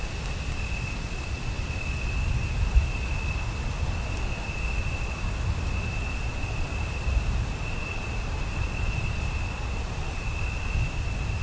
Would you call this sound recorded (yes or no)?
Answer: yes